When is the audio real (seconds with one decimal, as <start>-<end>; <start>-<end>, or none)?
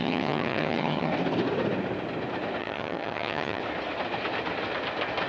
1.1-2.6; 3.6-5.3